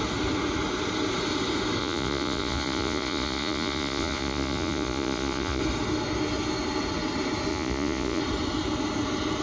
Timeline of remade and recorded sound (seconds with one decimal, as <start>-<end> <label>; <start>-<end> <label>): 0.0-1.8 recorded; 1.8-5.6 remade; 5.6-7.5 recorded; 7.5-8.2 remade; 8.2-9.4 recorded